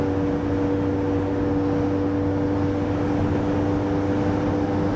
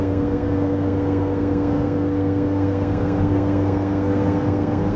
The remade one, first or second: second